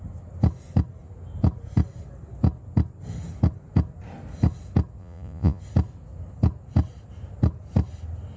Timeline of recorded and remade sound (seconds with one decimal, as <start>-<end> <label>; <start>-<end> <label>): 0.0-5.0 recorded; 5.0-5.6 remade; 5.6-8.4 recorded